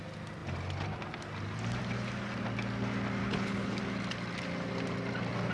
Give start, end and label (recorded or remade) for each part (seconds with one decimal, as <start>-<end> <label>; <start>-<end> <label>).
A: 0.0-3.2 recorded; 3.2-3.8 remade; 3.8-5.5 recorded